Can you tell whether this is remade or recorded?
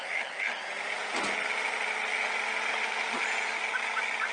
recorded